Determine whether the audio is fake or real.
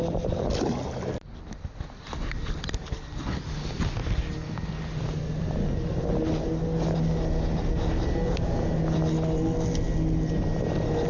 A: real